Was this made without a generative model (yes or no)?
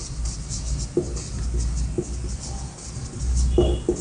yes